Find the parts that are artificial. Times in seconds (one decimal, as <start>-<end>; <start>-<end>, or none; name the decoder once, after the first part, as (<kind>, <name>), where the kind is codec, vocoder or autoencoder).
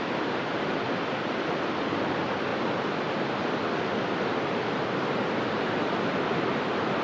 none